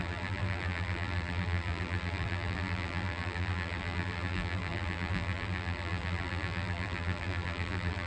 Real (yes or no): no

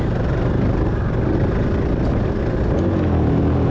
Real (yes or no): yes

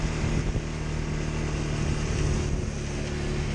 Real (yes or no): yes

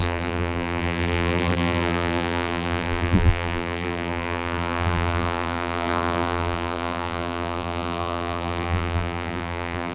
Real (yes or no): no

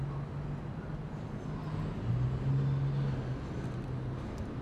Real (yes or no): yes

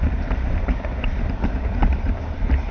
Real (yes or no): no